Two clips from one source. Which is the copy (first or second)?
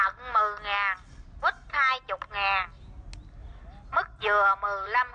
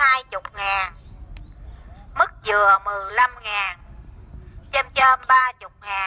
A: second